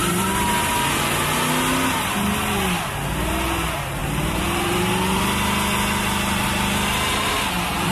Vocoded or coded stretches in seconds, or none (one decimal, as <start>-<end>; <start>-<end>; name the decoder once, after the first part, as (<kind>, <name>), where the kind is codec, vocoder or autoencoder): 0.0-0.5 (vocoder, BigVGAN v2); 4.0-4.9; 7.1-7.9